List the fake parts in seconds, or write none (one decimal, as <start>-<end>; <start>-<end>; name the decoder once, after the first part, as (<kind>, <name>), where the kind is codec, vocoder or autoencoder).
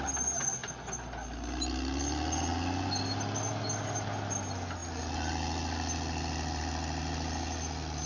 none